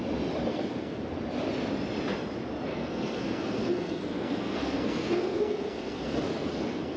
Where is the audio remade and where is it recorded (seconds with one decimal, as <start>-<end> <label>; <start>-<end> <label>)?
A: 0.0-0.5 recorded; 0.5-1.0 remade; 1.0-2.7 recorded; 2.7-7.0 remade